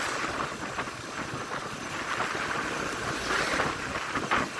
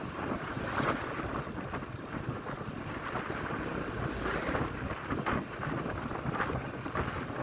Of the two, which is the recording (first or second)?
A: first